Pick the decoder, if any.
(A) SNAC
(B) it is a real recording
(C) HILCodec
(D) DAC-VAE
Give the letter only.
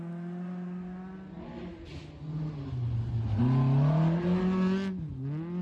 B